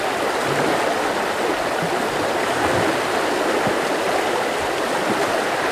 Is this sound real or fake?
real